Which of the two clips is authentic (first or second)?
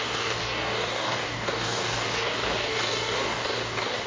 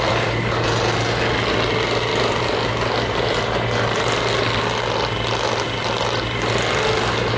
second